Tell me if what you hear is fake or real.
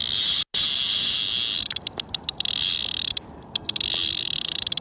real